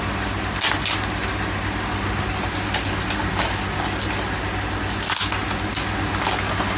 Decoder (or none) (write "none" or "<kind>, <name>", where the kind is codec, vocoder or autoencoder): none